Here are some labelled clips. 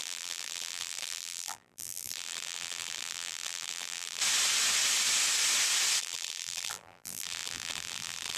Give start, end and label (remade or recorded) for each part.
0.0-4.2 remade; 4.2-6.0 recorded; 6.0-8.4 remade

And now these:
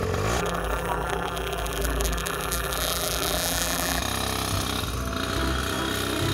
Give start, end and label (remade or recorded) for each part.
0.0-0.4 recorded; 0.4-4.0 remade; 4.0-6.3 recorded

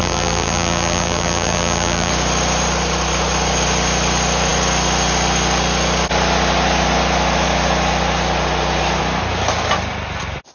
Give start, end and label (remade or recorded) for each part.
0.0-2.1 remade; 2.1-10.5 recorded

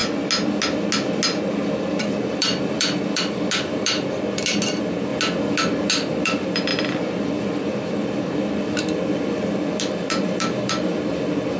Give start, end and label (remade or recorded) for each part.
0.0-1.5 recorded; 1.5-5.1 remade; 5.1-5.9 recorded; 5.9-11.6 remade